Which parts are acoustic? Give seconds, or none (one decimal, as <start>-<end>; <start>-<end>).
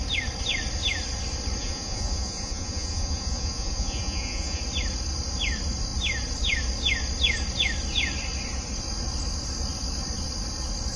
0.0-1.6; 4.6-11.0